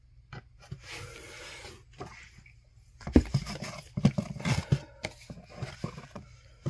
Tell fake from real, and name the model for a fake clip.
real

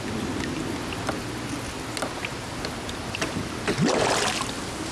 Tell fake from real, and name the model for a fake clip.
real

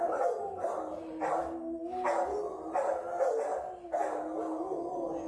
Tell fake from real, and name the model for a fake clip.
real